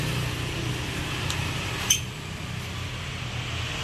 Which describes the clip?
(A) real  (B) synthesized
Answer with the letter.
A